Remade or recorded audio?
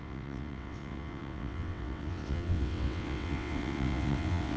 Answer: remade